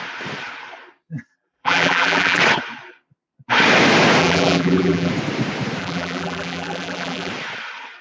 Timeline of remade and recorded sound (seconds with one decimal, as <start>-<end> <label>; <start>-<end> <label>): 0.0-1.3 recorded; 1.3-2.4 remade; 2.4-4.2 recorded; 4.2-5.1 remade; 5.1-5.8 recorded; 5.8-7.3 remade; 7.3-8.0 recorded